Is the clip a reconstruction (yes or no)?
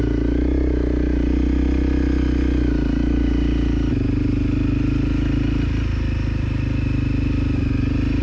no